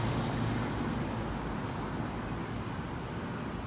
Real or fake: real